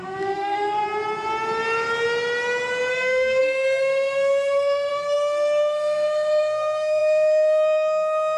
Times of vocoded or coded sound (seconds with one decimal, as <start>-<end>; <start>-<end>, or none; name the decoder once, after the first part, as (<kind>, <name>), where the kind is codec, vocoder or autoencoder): 0.0-0.8 (codec, SNAC); 2.9-8.4